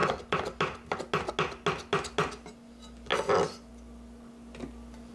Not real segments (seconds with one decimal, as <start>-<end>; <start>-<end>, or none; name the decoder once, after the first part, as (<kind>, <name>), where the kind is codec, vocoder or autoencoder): none